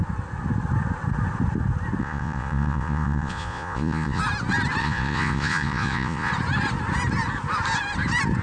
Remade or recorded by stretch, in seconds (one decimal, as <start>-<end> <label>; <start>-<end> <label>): 0.0-2.0 recorded; 2.0-4.2 remade; 4.2-4.8 recorded; 4.8-6.3 remade; 6.3-8.4 recorded